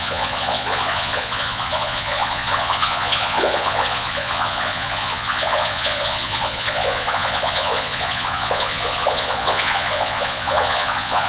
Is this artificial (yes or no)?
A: yes